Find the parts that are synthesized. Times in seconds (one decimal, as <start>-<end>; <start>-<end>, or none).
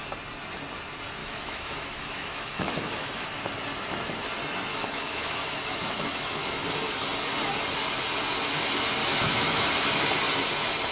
1.2-3.4; 4.7-6.6; 9.0-9.7